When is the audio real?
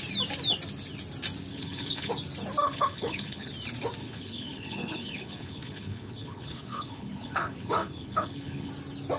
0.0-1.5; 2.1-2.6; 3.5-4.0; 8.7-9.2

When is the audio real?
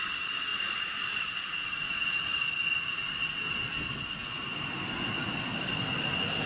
0.0-6.5